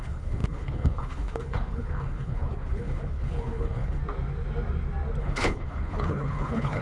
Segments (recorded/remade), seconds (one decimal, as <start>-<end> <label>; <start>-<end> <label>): 0.0-4.0 remade; 4.0-5.2 recorded; 5.2-6.8 remade